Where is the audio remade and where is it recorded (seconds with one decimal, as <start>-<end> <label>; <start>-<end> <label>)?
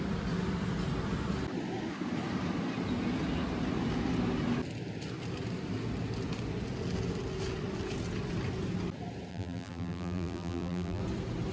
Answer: 0.0-9.3 recorded; 9.3-11.0 remade; 11.0-11.5 recorded